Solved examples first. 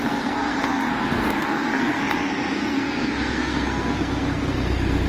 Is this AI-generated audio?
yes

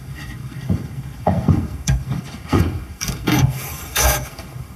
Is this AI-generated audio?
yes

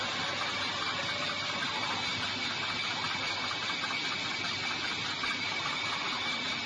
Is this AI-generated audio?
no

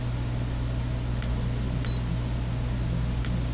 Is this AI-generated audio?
no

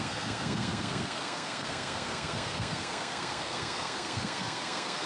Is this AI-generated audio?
yes